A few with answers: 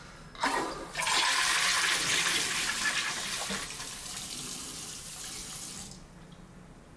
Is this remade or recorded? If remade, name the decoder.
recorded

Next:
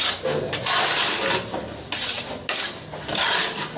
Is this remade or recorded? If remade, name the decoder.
recorded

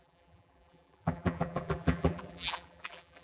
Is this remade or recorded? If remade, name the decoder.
remade, vocoder, BigVGAN v2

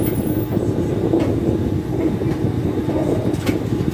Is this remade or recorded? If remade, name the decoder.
recorded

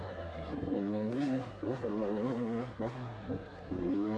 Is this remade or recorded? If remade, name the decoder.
remade, codec, SNAC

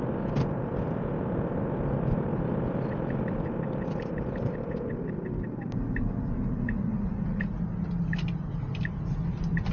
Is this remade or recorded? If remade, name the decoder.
recorded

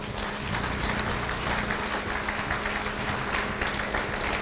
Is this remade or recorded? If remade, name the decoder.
recorded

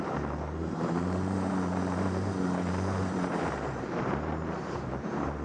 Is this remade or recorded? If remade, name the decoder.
remade, vocoder, BigVGAN v2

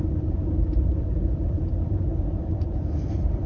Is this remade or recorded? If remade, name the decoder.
remade, vocoder, BigVGAN v2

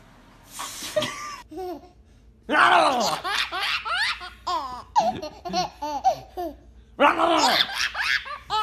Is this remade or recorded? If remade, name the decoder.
recorded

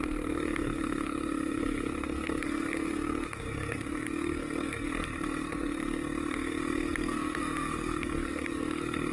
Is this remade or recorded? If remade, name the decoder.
remade, codec, SNAC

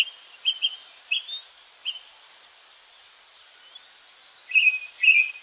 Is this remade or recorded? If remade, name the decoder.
recorded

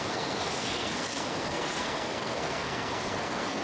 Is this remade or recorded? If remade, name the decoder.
remade, codec, SNAC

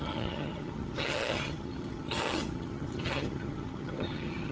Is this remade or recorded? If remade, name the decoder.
remade, vocoder, HiFi-GAN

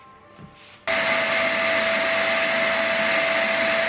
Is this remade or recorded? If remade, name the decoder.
recorded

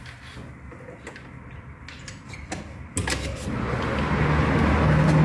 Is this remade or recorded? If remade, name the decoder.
recorded